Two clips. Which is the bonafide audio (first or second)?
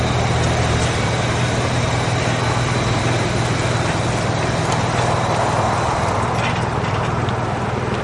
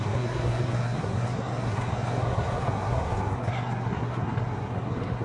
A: first